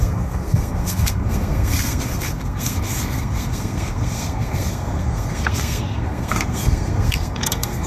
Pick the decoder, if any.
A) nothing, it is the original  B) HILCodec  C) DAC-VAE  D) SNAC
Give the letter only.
D